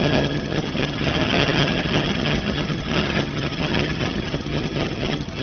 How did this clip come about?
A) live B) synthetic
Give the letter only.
B